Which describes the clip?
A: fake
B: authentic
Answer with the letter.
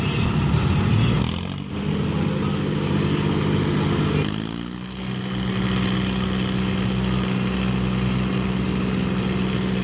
B